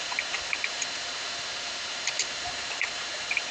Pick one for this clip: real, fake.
fake